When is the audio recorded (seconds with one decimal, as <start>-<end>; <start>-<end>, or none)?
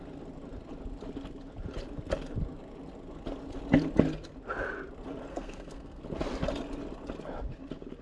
0.0-5.3; 6.0-8.0